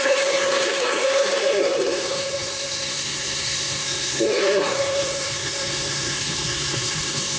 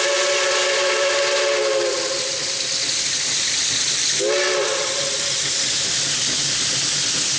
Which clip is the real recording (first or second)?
second